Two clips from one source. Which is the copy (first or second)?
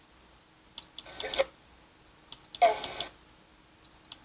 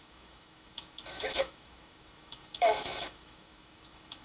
second